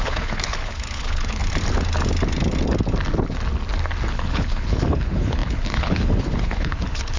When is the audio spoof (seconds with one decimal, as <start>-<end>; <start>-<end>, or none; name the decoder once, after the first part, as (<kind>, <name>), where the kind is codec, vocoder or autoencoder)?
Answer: 0.0-1.4 (codec, HILCodec); 4.1-7.2